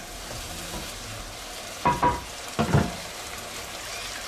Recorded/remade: remade